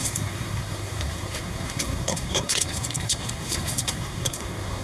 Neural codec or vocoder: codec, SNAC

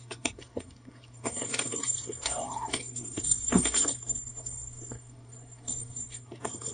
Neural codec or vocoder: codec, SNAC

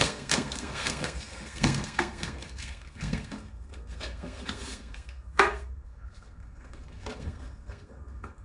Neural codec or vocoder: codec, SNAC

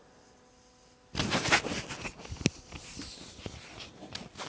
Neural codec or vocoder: none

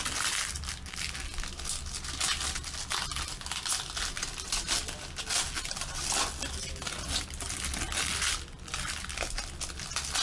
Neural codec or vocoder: none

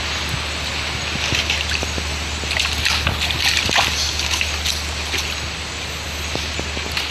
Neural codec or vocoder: none